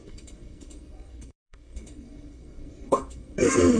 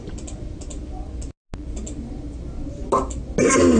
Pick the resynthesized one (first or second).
first